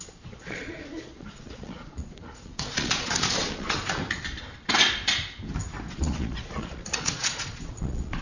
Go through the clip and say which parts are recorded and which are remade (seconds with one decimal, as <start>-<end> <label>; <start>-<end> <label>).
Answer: 0.0-4.0 remade; 4.0-5.9 recorded; 5.9-8.2 remade